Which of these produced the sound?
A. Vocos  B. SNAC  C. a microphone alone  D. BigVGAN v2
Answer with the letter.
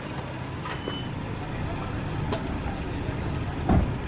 C